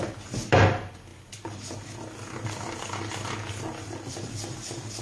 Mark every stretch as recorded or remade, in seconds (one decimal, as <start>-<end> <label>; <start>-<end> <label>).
0.0-5.0 recorded